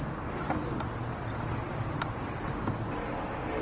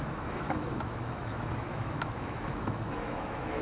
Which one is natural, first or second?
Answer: first